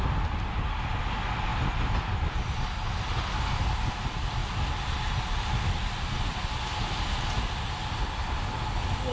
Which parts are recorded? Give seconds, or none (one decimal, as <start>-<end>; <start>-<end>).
0.0-9.1